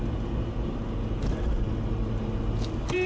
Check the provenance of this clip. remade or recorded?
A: recorded